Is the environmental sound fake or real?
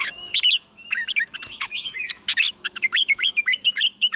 fake